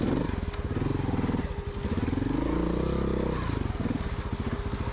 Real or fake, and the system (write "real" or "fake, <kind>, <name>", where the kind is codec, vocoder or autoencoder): real